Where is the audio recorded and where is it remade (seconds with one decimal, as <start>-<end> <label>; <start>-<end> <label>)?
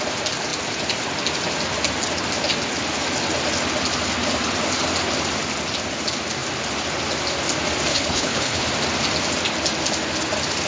0.0-7.9 recorded; 7.9-8.7 remade; 8.7-10.7 recorded